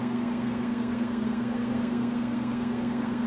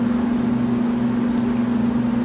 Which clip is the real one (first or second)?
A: second